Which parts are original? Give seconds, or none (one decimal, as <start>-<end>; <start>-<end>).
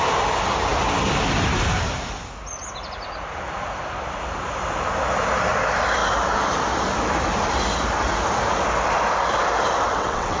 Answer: 0.0-9.9